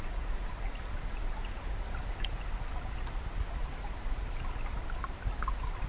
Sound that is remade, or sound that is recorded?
recorded